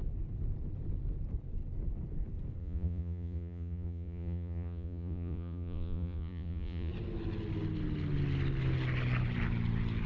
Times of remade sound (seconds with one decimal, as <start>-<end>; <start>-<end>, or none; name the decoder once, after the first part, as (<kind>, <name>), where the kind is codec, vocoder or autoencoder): 2.6-6.9 (vocoder, Vocos)

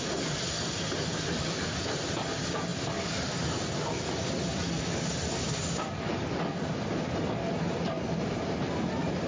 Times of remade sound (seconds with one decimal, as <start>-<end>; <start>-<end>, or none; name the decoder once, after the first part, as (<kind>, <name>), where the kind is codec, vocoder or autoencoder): none

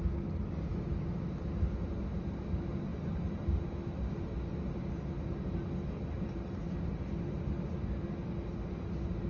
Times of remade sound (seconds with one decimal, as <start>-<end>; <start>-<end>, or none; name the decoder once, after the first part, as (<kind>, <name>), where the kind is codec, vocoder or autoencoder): 0.7-1.4 (autoencoder, DAC-VAE)

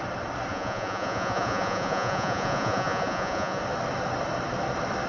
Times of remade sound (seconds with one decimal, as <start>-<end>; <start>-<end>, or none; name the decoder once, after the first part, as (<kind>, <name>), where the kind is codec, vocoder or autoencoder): 0.5-3.6 (vocoder, Vocos)

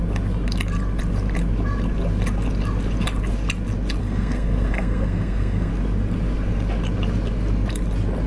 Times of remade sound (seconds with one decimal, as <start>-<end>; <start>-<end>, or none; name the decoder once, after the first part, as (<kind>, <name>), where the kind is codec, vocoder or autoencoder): 4.0-5.7 (codec, SNAC)

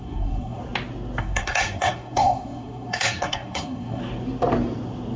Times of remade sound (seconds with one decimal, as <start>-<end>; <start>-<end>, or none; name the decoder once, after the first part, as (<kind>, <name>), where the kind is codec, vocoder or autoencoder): 0.0-0.6 (codec, SNAC); 1.2-4.0